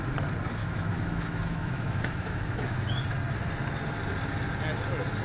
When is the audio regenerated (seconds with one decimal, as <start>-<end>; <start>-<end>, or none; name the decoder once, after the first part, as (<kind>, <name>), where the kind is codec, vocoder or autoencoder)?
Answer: 0.6-2.9 (autoencoder, DAC-VAE)